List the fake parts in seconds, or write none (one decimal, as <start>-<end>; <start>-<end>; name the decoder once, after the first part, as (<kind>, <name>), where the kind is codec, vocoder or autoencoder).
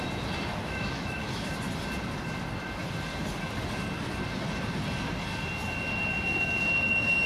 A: 0.5-1.6 (autoencoder, DAC-VAE)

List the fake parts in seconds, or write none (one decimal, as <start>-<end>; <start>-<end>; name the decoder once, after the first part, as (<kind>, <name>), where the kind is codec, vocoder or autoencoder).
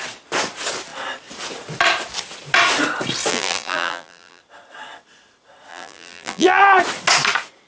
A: 3.3-4.4 (vocoder, BigVGAN v2); 5.7-6.6